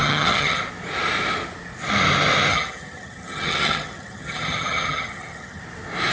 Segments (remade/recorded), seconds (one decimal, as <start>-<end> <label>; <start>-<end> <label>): 0.0-0.6 remade; 0.6-2.5 recorded; 2.5-5.6 remade; 5.6-6.1 recorded